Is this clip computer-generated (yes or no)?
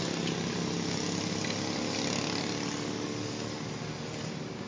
no